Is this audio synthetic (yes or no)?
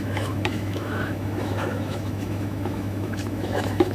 yes